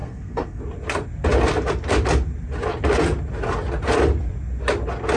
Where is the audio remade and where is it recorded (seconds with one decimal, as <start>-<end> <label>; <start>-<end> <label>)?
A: 0.0-0.6 remade; 0.6-5.2 recorded